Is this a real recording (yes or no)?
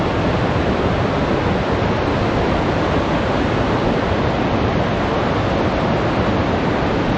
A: yes